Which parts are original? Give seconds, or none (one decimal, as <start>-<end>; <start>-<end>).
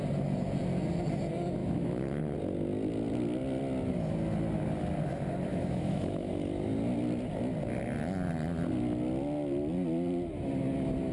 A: 0.0-1.6; 2.2-5.5; 6.3-11.1